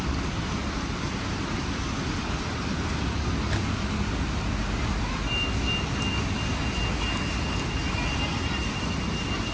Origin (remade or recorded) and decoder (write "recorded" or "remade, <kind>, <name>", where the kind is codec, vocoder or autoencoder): recorded